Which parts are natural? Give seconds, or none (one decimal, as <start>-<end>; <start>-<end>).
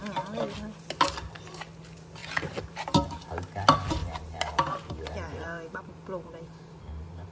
0.0-2.2; 3.6-4.0; 5.8-7.3